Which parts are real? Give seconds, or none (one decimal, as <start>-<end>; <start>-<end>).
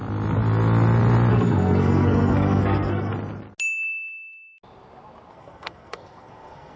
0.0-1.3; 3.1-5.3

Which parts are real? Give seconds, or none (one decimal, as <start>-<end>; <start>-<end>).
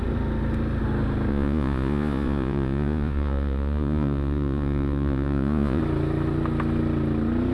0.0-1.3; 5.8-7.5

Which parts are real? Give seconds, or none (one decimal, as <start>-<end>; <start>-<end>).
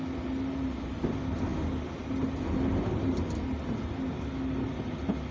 0.0-5.3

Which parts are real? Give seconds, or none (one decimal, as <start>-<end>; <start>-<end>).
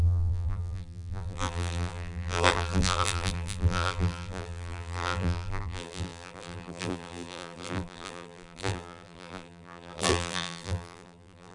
none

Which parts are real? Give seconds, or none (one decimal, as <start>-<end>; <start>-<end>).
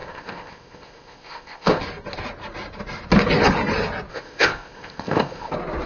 1.8-4.1; 5.5-5.9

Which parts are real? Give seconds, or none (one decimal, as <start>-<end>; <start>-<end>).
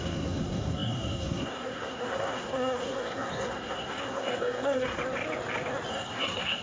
5.0-5.9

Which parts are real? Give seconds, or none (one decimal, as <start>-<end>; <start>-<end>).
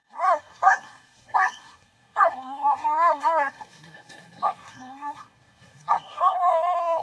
none